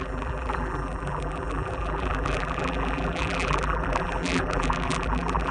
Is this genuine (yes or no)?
no